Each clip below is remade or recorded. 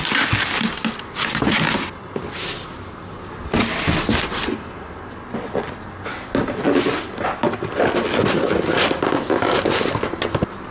recorded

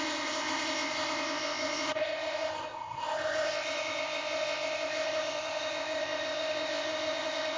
remade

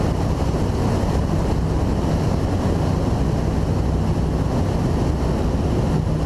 recorded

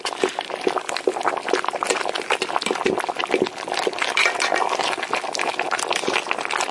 recorded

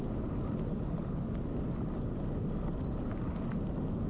recorded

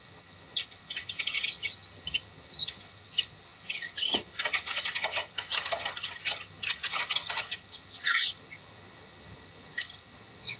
remade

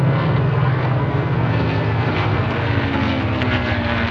remade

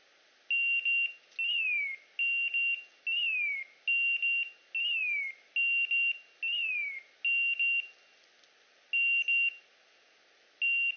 recorded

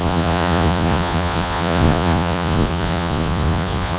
remade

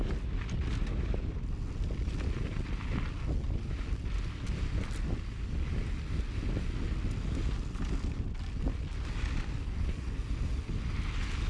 recorded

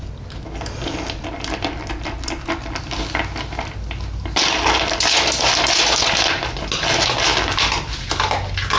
recorded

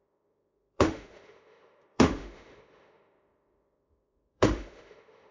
remade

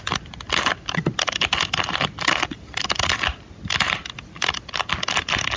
recorded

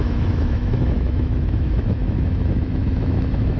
remade